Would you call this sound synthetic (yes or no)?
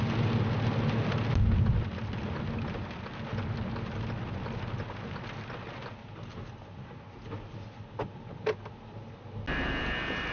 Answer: no